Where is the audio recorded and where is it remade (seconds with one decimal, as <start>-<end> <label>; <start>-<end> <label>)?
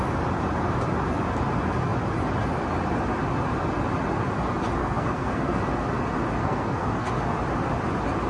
0.0-4.8 recorded; 4.8-5.6 remade; 5.6-6.4 recorded; 6.4-7.1 remade; 7.1-8.3 recorded